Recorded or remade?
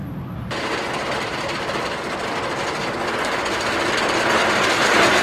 recorded